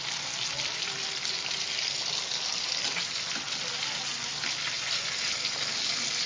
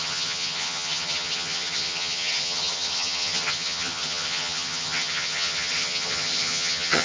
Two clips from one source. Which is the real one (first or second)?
first